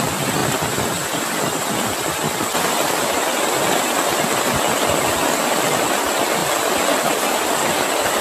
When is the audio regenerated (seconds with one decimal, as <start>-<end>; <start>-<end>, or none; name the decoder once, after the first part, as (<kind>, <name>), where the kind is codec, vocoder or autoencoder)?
none